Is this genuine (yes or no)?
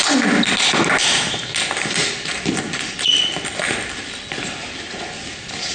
yes